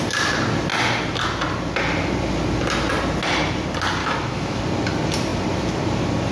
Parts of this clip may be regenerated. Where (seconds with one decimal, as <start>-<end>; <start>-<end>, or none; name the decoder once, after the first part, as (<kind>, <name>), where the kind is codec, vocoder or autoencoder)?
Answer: 4.0-4.6 (autoencoder, DAC-VAE)

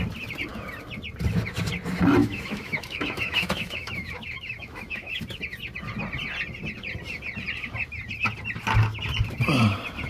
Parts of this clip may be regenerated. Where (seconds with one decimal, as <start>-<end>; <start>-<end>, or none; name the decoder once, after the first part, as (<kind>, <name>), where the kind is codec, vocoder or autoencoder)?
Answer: 2.2-5.2 (autoencoder, DAC-VAE)

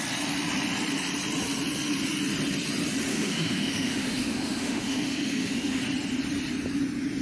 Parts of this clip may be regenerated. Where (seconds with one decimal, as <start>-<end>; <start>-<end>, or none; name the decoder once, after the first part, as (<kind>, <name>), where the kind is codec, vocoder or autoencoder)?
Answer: 3.1-5.8 (autoencoder, DAC-VAE)

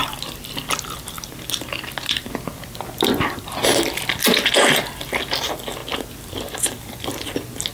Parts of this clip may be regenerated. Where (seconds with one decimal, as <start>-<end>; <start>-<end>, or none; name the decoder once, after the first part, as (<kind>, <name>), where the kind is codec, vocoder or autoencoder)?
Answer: none